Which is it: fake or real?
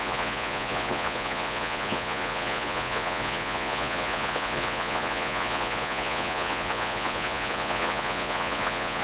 fake